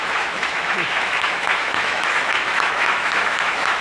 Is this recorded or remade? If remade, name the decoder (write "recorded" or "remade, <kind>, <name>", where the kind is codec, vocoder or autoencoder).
remade, autoencoder, DAC-VAE